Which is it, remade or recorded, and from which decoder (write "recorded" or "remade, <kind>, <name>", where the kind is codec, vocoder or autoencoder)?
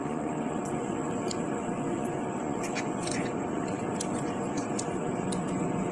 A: remade, vocoder, Vocos